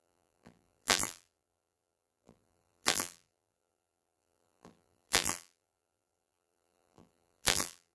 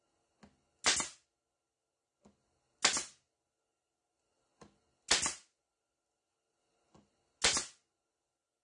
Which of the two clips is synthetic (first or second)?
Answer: first